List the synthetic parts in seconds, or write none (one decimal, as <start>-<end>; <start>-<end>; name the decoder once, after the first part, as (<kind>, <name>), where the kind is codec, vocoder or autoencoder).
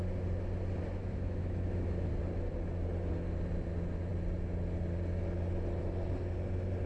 1.0-2.1 (autoencoder, DAC-VAE)